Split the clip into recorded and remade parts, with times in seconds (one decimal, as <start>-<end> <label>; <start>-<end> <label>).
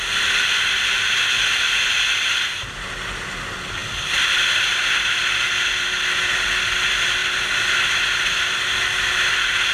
0.0-9.7 recorded